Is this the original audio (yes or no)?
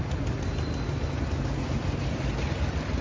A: yes